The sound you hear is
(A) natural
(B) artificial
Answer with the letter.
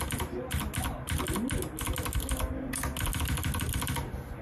A